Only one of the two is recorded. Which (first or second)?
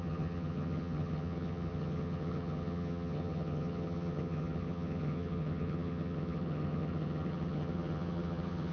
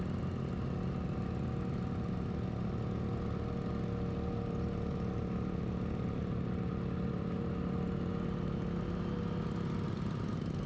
second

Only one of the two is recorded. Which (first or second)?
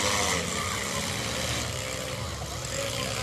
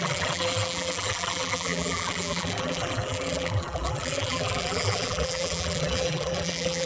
first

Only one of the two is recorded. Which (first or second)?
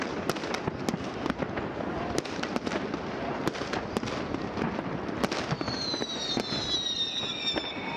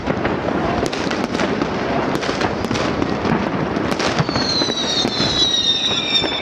first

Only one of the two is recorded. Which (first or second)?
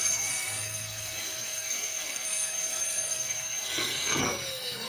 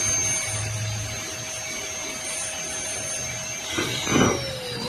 second